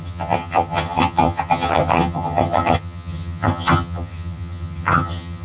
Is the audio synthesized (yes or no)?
yes